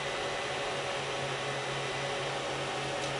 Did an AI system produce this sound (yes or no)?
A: no